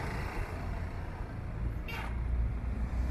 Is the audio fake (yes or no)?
no